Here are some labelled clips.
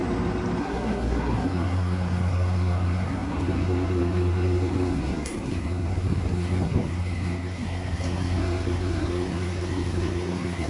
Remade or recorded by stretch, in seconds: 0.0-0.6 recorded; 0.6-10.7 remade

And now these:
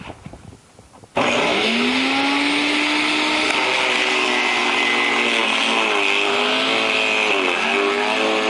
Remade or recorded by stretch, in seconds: 0.0-8.5 recorded